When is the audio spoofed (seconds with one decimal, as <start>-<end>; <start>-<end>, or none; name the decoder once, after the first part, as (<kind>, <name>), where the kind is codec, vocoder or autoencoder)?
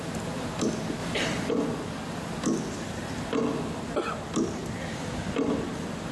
1.0-1.5 (vocoder, BigVGAN v2); 4.6-5.3